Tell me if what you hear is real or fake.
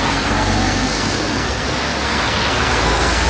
fake